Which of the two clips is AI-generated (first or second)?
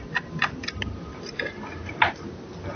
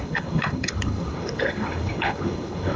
second